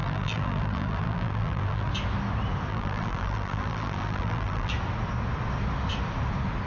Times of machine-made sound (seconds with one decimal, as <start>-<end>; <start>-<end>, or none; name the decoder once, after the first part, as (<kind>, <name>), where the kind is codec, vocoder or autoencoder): 0.0-1.9 (vocoder, BigVGAN v2); 2.7-4.7